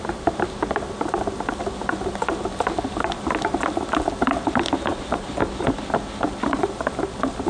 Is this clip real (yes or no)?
yes